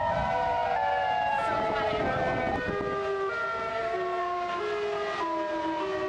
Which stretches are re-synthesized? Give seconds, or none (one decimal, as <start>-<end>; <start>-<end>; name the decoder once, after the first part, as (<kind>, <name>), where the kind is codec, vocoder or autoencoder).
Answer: 3.7-4.6 (codec, SNAC)